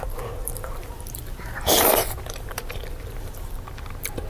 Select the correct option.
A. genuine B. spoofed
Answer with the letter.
B